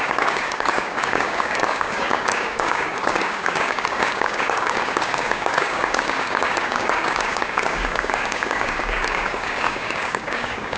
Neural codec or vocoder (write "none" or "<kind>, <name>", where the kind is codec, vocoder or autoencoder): codec, DAC